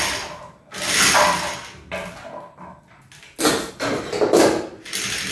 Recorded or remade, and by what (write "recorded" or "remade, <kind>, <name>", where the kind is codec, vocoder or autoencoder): recorded